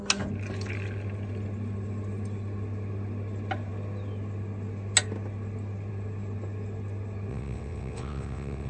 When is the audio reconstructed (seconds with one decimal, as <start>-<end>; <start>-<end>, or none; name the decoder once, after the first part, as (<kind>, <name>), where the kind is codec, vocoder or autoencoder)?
7.3-8.7 (vocoder, WaveNeXt)